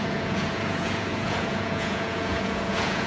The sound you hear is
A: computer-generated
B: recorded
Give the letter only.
A